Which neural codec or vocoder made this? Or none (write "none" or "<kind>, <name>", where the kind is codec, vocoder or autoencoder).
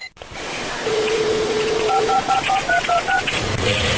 vocoder, Vocos